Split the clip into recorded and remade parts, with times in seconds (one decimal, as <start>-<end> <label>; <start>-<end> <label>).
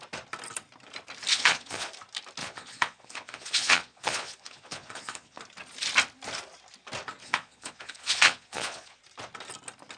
0.0-1.3 recorded; 1.3-1.9 remade; 1.9-2.4 recorded; 2.4-5.4 remade; 5.4-7.2 recorded; 7.2-9.0 remade; 9.0-10.0 recorded